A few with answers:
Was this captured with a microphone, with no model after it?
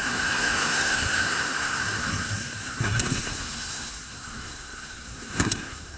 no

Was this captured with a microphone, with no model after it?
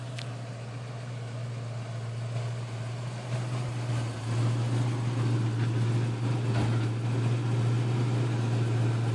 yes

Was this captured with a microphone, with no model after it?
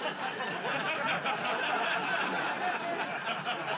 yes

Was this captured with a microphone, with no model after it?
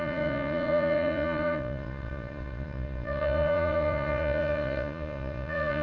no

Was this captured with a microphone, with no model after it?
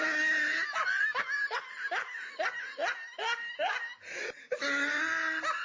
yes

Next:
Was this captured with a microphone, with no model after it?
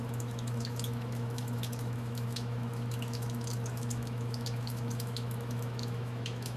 no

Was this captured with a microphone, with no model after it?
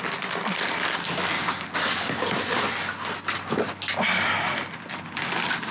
yes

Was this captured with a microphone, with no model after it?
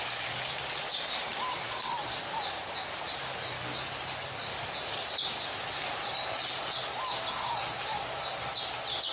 yes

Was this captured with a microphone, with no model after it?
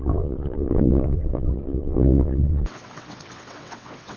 no